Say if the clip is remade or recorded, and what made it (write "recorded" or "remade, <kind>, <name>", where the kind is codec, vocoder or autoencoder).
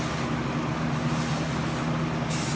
recorded